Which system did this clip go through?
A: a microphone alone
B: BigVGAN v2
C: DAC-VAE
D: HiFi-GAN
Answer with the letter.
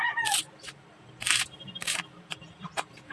B